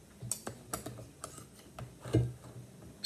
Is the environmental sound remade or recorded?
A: recorded